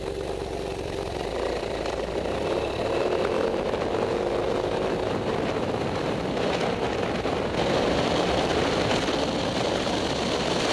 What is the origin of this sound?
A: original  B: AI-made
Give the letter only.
B